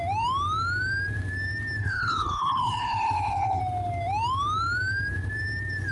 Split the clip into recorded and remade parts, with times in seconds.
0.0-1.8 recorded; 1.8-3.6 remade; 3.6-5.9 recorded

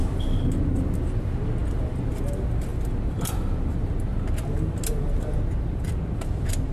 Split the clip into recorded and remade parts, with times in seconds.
0.0-6.7 recorded

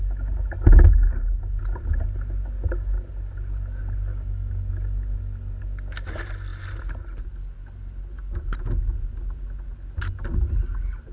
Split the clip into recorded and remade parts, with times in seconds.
0.0-4.1 recorded; 4.1-4.7 remade; 4.7-11.1 recorded

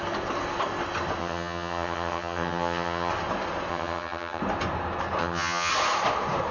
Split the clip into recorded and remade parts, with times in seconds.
0.0-1.2 recorded; 1.2-3.1 remade; 3.1-3.7 recorded; 3.7-4.4 remade; 4.4-5.2 recorded; 5.2-5.7 remade; 5.7-6.5 recorded